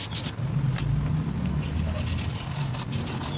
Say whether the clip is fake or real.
real